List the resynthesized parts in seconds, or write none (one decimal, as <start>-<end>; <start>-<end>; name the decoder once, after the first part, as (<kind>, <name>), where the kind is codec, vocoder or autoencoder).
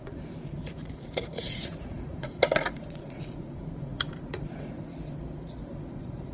0.0-4.9 (vocoder, Vocos); 5.7-6.3